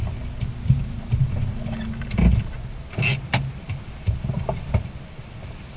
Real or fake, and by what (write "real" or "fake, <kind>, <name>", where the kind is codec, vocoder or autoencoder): real